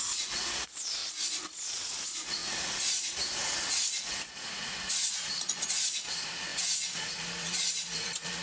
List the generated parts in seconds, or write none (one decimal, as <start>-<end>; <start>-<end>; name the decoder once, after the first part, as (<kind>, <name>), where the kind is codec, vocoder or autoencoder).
0.0-1.0 (vocoder, Vocos); 1.6-8.4